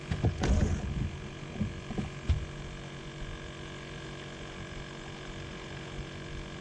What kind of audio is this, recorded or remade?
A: remade